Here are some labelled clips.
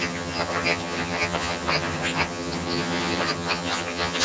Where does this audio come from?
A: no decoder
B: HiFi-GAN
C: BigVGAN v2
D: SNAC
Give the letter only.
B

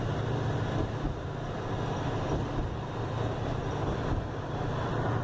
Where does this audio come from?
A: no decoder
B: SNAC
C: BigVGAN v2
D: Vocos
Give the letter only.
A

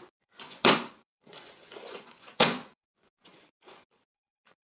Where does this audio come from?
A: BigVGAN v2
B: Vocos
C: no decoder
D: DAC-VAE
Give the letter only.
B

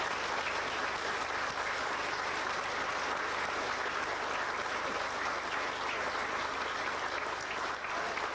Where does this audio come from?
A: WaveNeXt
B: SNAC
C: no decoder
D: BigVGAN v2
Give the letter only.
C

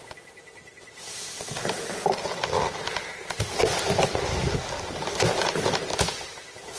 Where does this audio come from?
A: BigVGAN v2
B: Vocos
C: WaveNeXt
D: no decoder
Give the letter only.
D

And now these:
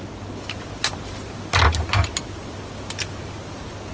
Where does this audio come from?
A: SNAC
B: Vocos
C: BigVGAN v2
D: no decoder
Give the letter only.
D